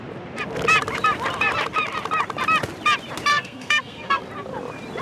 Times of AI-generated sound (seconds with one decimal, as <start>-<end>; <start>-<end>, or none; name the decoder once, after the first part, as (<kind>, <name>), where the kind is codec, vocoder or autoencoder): 3.3-4.2 (codec, SNAC)